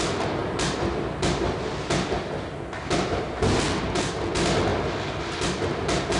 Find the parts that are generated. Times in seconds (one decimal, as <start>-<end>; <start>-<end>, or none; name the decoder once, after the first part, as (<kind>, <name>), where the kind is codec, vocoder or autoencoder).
none